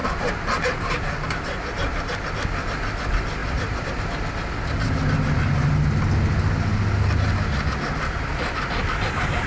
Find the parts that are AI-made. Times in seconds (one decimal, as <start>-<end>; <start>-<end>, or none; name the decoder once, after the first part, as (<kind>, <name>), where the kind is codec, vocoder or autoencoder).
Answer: 0.0-2.2 (vocoder, BigVGAN v2); 3.4-3.9